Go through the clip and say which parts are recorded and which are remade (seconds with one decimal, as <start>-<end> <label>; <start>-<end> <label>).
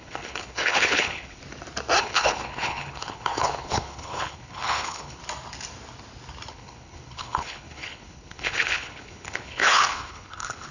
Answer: 0.0-1.4 remade; 1.4-2.0 recorded; 2.0-5.2 remade; 5.2-6.5 recorded; 6.5-10.7 remade